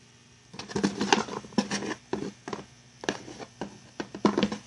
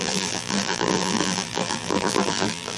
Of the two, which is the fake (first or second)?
second